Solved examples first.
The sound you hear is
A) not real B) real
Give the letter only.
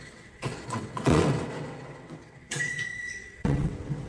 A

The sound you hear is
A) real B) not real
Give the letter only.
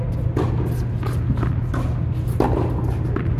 A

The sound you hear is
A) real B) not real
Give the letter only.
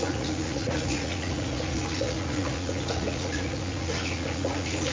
B